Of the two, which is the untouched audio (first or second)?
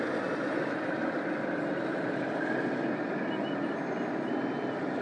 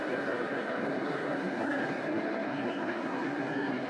first